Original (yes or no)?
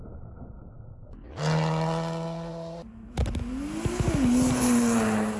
yes